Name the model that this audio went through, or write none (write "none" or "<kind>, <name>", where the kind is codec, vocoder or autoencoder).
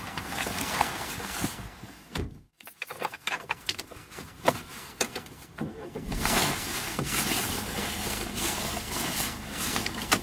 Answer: codec, SNAC